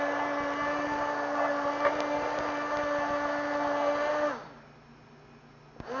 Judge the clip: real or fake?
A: real